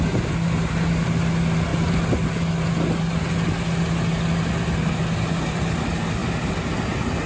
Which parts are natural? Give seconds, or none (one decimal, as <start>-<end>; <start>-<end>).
0.0-7.3